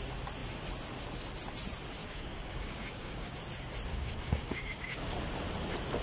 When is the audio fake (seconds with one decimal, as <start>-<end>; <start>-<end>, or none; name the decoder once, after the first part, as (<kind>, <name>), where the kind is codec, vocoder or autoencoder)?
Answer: 2.0-3.4 (codec, DAC); 3.9-5.1